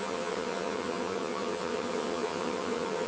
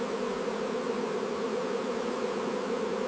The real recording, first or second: second